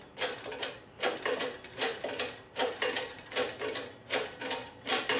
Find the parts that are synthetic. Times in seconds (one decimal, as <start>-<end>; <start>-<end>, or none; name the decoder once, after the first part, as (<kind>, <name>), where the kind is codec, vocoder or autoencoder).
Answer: 1.3-3.7 (vocoder, BigVGAN v2)